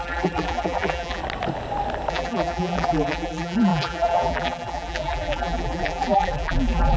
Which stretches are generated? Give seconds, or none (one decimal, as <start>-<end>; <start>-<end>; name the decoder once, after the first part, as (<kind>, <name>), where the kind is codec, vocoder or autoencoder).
0.0-1.2 (vocoder, BigVGAN v2); 2.1-7.0